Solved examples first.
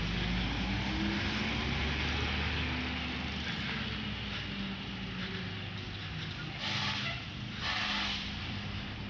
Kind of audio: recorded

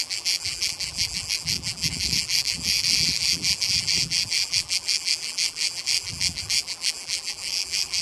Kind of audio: remade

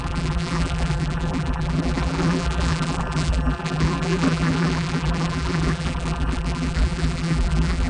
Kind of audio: remade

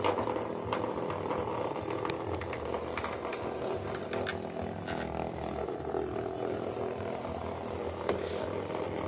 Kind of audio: recorded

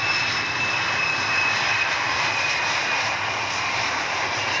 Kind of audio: remade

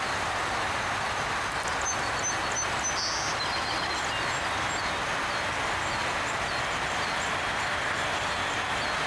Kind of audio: recorded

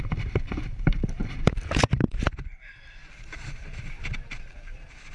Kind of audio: remade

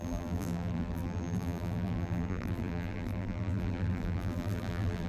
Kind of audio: remade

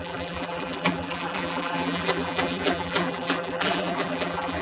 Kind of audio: remade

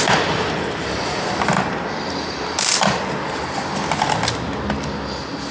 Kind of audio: recorded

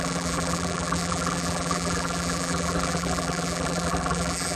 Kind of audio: remade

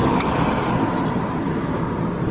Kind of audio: recorded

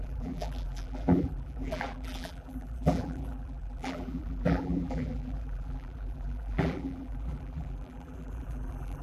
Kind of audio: remade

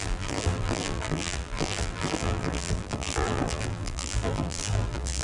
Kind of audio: remade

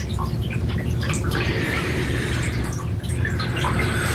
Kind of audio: recorded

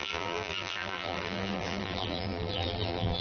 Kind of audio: remade